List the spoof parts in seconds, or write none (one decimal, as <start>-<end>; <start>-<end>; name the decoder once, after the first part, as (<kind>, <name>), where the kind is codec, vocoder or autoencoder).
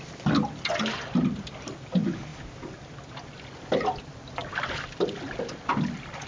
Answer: none